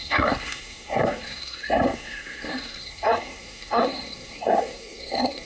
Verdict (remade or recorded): remade